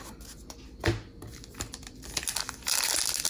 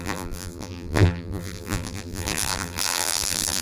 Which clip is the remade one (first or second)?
second